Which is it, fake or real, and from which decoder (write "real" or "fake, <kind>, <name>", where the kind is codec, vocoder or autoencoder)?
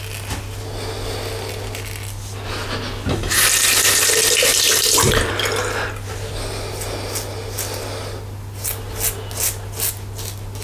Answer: real